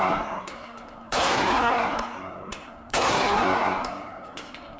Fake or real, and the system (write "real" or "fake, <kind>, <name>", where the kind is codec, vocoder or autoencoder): fake, codec, SNAC